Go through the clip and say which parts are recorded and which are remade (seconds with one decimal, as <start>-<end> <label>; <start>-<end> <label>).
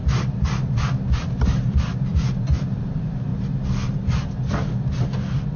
0.0-1.5 recorded; 1.5-3.3 remade; 3.3-5.6 recorded